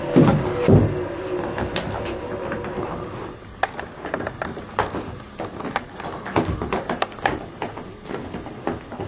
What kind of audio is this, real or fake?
real